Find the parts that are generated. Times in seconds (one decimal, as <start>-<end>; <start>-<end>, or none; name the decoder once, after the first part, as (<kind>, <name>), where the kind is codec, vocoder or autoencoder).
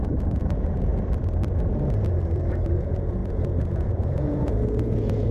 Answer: 0.0-0.9 (vocoder, Vocos); 2.7-5.3